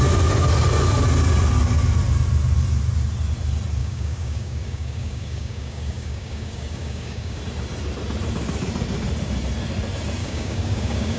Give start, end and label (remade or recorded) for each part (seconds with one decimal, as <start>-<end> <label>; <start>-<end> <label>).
0.0-3.8 recorded; 3.8-7.4 remade; 7.4-10.2 recorded; 10.2-11.2 remade